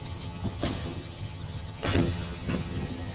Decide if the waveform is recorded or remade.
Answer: remade